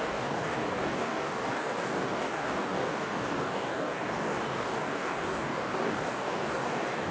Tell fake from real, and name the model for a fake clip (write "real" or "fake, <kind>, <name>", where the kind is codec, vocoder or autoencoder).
fake, codec, DAC